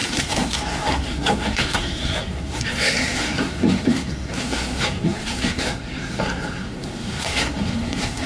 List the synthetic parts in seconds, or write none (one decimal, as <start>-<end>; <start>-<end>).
0.0-8.3